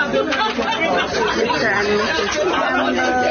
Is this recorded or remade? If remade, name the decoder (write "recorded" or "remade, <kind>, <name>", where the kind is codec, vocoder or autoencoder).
recorded